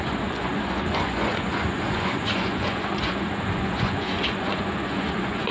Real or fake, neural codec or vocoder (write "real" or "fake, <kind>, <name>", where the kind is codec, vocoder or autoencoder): fake, vocoder, Vocos